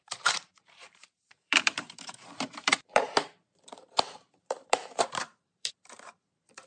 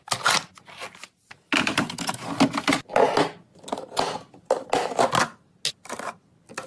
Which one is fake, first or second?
first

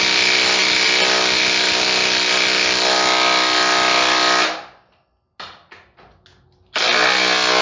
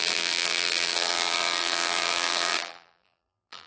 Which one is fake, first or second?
second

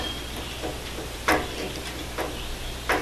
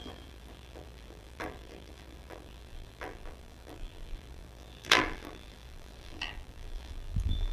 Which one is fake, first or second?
second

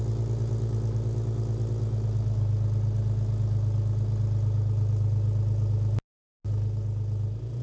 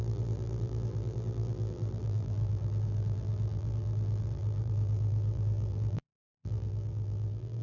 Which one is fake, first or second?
second